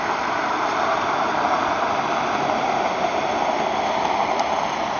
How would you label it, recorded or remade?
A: recorded